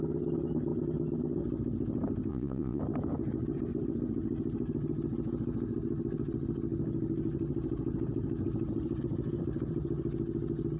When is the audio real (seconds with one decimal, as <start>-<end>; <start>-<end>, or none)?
0.0-2.3; 2.8-10.8